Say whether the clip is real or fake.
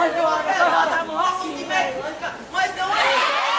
real